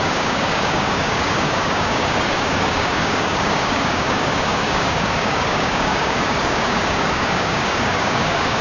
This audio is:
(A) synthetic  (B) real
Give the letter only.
A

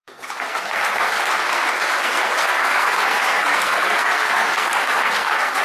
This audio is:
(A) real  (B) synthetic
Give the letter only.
B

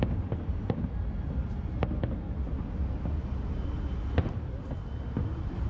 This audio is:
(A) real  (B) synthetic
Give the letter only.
A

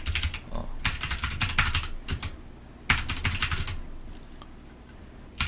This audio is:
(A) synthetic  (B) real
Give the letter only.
B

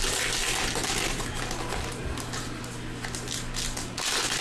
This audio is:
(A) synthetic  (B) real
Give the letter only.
B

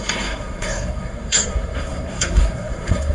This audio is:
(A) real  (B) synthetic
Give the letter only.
B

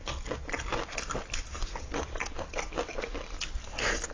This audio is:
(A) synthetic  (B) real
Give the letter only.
B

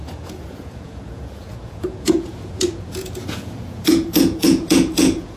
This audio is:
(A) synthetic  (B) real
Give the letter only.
A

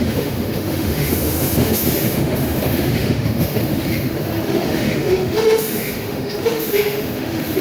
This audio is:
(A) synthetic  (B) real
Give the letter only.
A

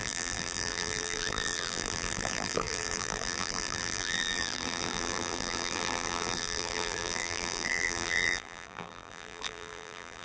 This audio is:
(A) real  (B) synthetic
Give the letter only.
B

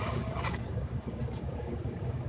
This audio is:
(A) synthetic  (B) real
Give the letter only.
A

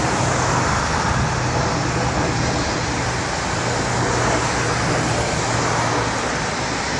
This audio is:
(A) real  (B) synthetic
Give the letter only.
A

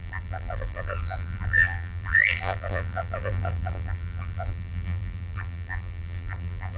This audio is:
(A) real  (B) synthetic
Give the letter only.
B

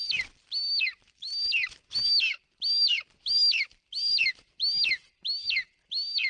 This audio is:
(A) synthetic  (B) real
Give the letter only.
B